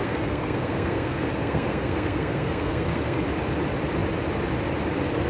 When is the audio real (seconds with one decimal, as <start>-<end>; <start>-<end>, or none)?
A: 3.2-5.3